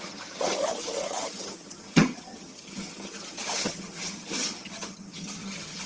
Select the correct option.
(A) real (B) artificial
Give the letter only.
B